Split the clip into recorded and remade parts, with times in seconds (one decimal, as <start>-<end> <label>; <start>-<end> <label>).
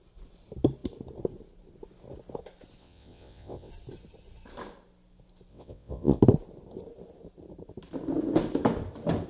0.0-2.8 recorded; 2.8-3.7 remade; 3.7-5.5 recorded; 5.5-6.2 remade; 6.2-9.3 recorded